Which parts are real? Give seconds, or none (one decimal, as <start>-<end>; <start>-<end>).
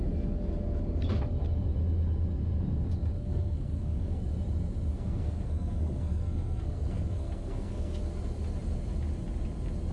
0.0-3.2; 4.2-4.9; 8.0-9.9